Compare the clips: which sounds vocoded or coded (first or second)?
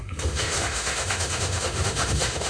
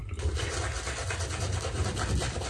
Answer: first